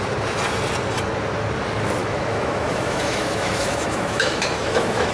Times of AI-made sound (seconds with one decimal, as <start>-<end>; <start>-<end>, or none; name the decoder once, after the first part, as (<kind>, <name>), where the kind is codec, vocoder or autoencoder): 2.0-5.1 (autoencoder, DAC-VAE)